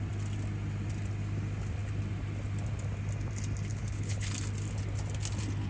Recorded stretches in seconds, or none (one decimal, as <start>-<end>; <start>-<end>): 0.0-3.7; 4.3-5.7

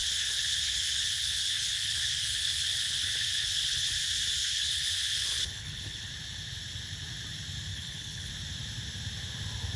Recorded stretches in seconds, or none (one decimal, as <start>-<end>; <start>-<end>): 3.9-4.4; 6.1-7.7; 8.3-9.8

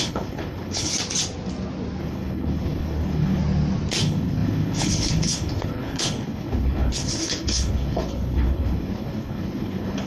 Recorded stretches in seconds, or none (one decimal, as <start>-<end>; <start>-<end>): 0.9-2.0; 3.4-4.0

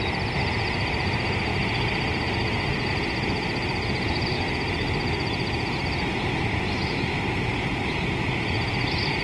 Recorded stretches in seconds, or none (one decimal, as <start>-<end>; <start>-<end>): 0.0-9.2

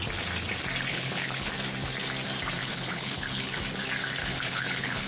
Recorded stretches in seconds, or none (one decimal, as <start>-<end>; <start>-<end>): 0.0-0.9; 1.5-2.6; 3.6-4.2

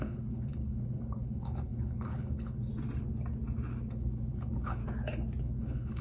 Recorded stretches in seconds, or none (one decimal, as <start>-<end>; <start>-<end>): 2.7-3.9; 4.8-5.4

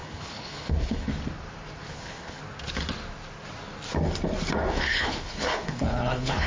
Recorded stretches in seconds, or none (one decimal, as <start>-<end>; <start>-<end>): 1.1-1.9; 2.4-4.7

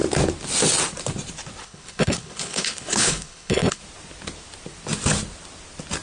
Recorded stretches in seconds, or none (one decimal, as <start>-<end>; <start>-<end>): 0.0-1.6; 3.8-6.0